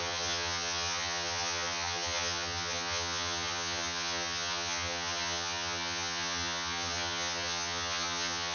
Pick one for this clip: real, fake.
fake